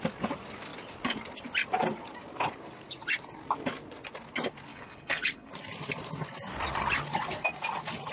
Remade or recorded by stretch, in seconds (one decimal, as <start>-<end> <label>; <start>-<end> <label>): 0.0-4.7 recorded; 4.7-5.5 remade; 5.5-8.1 recorded